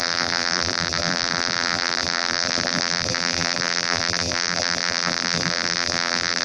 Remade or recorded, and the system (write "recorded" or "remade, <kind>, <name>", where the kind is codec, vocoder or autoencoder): remade, vocoder, BigVGAN v2